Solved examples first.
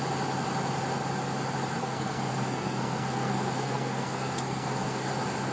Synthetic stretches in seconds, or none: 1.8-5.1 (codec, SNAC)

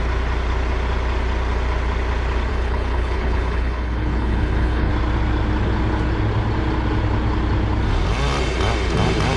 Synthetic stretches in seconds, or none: 2.5-4.9 (codec, HILCodec)

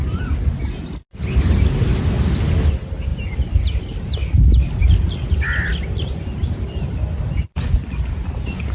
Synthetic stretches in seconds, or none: none